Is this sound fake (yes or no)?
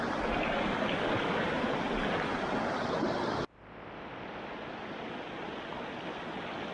no